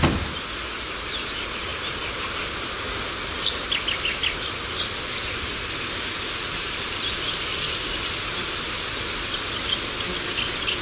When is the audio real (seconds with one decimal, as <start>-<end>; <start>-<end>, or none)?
0.0-4.2; 5.6-10.8